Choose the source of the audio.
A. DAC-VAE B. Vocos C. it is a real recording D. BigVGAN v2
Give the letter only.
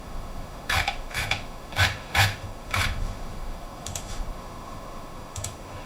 A